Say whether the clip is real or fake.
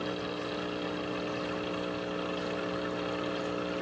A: real